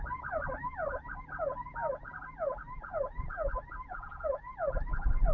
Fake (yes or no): no